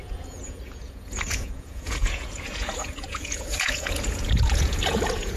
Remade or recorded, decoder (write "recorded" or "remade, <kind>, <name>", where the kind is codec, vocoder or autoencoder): remade, vocoder, Vocos